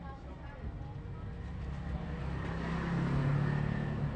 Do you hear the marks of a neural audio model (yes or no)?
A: no